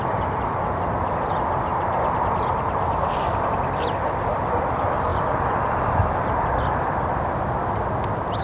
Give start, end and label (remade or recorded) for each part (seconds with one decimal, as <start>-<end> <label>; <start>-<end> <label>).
0.0-8.4 recorded